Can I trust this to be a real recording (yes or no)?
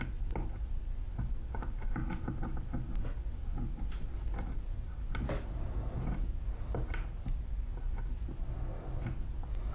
yes